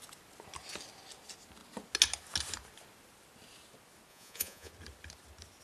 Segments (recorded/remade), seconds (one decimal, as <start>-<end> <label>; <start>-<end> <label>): 0.0-4.1 recorded; 4.1-4.7 remade; 4.7-5.6 recorded